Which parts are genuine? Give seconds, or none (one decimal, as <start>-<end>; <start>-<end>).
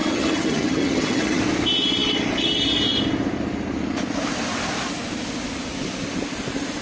1.4-6.8